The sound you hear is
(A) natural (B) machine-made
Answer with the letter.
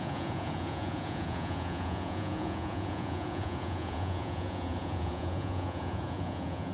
B